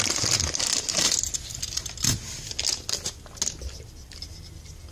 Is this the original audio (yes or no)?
yes